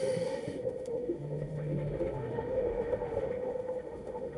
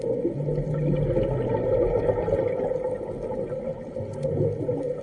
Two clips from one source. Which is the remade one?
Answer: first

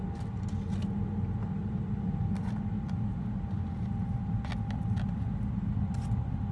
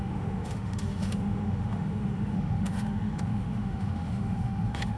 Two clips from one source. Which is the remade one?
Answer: second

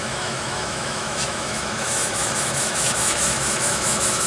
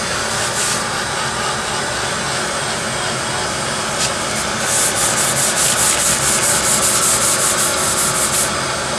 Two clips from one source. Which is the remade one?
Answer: first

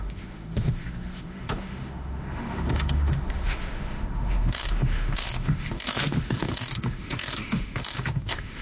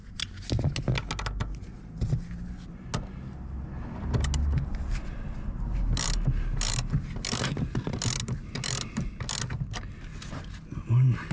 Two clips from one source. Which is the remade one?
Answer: first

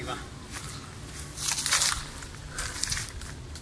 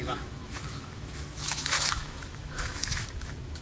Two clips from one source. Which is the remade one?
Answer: second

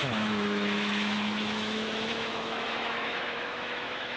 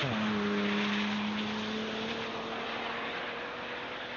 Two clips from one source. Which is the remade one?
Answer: first